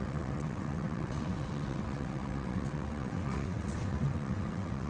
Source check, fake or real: fake